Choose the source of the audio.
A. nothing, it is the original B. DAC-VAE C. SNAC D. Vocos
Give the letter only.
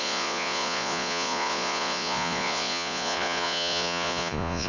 D